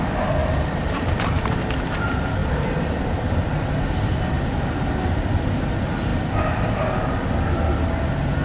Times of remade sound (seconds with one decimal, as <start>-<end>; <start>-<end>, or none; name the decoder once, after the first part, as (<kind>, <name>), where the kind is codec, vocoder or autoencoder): 6.1-6.8 (vocoder, BigVGAN v2)